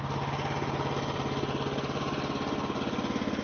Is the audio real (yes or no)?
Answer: yes